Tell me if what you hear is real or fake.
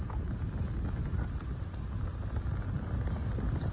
real